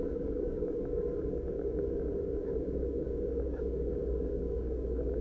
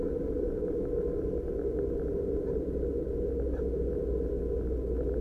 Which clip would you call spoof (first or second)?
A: first